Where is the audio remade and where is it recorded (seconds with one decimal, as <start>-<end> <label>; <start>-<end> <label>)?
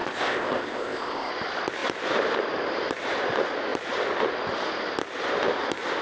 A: 0.0-1.3 remade; 1.3-6.0 recorded